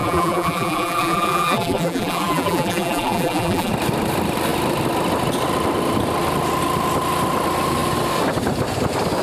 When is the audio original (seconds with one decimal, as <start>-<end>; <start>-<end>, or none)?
3.7-9.2